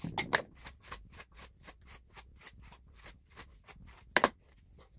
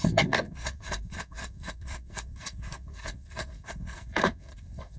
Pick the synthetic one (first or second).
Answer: second